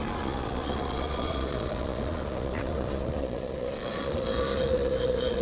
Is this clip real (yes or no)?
no